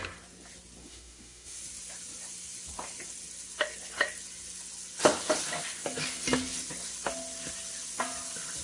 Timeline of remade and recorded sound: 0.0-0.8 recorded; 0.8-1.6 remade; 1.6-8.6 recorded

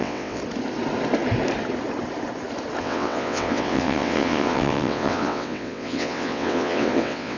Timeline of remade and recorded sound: 0.0-0.4 remade; 0.4-2.8 recorded; 2.8-7.4 remade

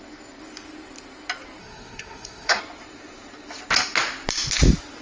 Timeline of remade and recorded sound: 0.0-1.6 recorded; 1.6-2.6 remade; 2.6-5.0 recorded

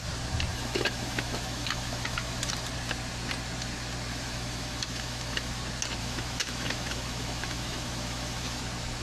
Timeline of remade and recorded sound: 0.0-0.5 recorded; 0.5-2.5 remade; 2.5-4.1 recorded; 4.1-5.6 remade; 5.6-6.0 recorded; 6.0-8.6 remade; 8.6-9.0 recorded